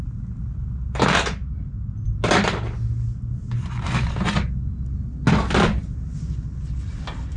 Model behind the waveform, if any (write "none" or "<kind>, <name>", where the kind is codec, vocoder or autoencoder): none